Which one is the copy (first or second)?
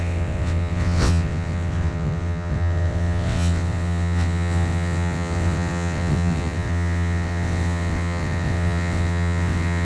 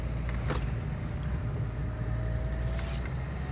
first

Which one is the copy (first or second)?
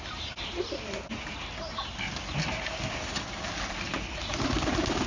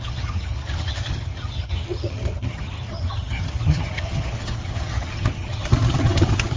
second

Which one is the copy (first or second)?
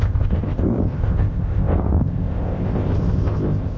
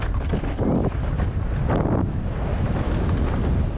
first